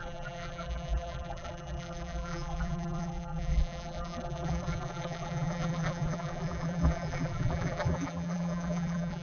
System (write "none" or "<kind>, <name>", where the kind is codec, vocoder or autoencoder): vocoder, BigVGAN v2